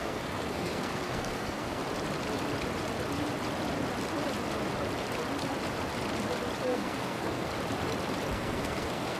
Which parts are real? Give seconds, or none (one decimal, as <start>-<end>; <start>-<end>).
1.8-6.6; 7.5-8.3